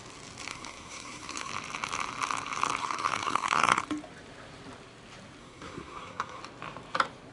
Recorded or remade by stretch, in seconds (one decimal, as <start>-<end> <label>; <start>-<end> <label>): 0.0-0.5 recorded; 0.5-1.5 remade; 1.5-2.8 recorded; 2.8-3.8 remade; 3.8-5.4 recorded; 5.4-6.4 remade; 6.4-7.3 recorded

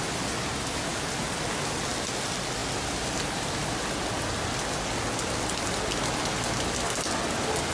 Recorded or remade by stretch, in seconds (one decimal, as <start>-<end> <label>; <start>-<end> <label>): 0.0-7.7 recorded

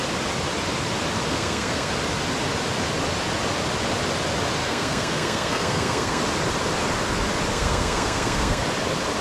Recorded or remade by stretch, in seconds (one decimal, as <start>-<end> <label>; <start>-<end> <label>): 0.0-1.3 recorded; 1.3-1.9 remade; 1.9-4.6 recorded; 4.6-6.2 remade; 6.2-7.5 recorded; 7.5-8.6 remade; 8.6-9.2 recorded

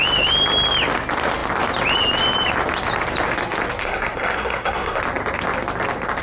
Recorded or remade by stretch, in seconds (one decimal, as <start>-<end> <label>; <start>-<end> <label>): 0.0-3.8 recorded; 3.8-5.0 remade; 5.0-6.2 recorded

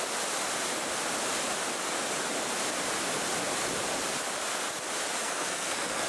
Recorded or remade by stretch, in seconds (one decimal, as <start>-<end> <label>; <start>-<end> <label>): 0.0-5.2 recorded; 5.2-6.1 remade

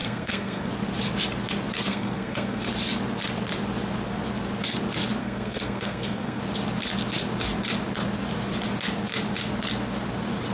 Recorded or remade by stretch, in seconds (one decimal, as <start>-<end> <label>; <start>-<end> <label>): 0.0-0.7 remade; 0.7-1.9 recorded; 1.9-2.6 remade; 2.6-5.2 recorded; 5.2-6.4 remade; 6.4-10.5 recorded

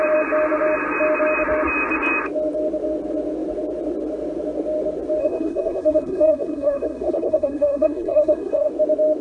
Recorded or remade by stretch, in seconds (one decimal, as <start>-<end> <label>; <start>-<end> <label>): 0.0-5.2 recorded; 5.2-8.7 remade; 8.7-9.2 recorded

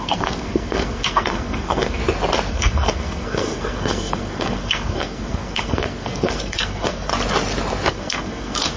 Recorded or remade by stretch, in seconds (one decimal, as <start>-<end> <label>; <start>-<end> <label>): 0.0-2.0 remade; 2.0-2.5 recorded; 2.5-7.1 remade; 7.1-7.9 recorded; 7.9-8.8 remade